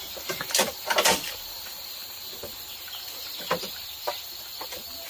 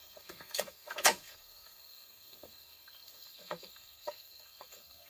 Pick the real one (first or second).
first